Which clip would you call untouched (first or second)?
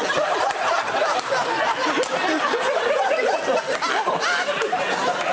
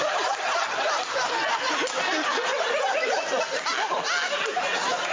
second